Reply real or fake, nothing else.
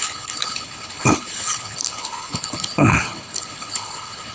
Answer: fake